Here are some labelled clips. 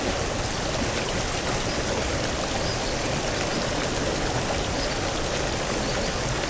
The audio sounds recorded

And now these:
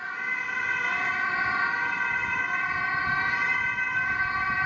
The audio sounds recorded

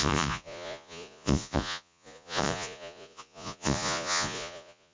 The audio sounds remade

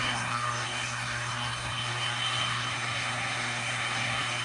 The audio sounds remade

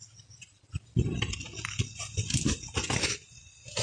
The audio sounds recorded